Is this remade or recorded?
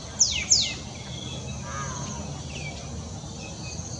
recorded